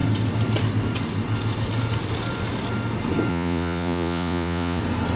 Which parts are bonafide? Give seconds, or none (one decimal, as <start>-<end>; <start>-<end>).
0.0-3.3; 4.8-5.2